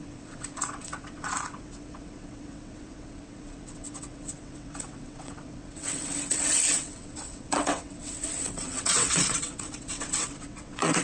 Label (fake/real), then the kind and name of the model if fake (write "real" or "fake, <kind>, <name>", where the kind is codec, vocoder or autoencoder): fake, vocoder, WaveNeXt